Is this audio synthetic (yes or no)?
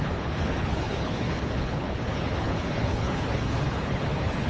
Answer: yes